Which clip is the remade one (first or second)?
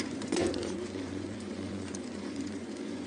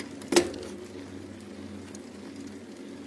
first